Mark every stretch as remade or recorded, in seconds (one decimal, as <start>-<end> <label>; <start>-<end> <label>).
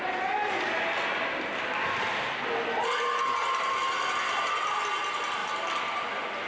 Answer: 0.0-6.5 recorded